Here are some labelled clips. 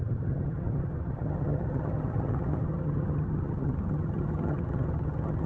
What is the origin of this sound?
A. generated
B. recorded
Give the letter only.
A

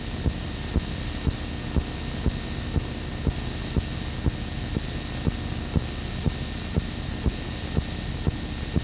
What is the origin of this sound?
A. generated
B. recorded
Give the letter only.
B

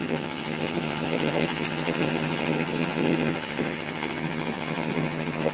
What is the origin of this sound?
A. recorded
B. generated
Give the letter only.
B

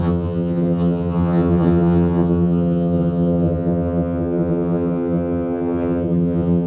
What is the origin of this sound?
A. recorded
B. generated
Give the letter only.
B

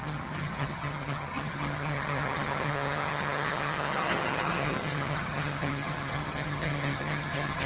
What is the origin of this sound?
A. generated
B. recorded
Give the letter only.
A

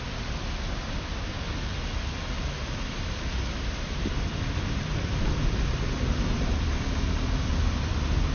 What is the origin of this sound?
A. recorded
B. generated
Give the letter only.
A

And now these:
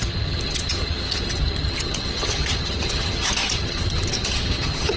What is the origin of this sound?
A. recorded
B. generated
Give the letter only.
B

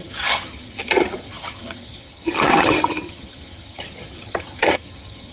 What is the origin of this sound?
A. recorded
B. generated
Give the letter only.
B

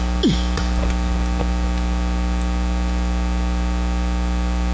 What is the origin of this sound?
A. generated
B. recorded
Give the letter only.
B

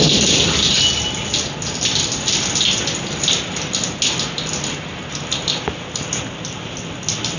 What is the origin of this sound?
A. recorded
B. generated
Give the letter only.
A